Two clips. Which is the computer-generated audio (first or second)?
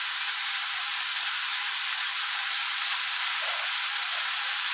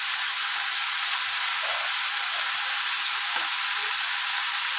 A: first